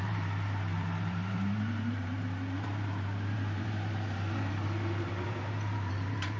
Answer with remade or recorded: remade